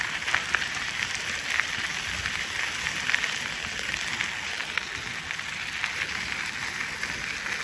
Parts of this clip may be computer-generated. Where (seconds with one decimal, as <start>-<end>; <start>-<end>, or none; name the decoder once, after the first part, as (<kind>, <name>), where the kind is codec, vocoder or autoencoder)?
none